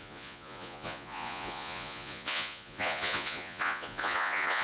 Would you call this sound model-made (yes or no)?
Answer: yes